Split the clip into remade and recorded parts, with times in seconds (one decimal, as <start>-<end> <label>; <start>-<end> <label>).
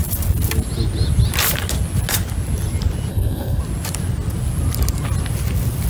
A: 0.0-3.1 recorded; 3.1-3.6 remade; 3.6-5.9 recorded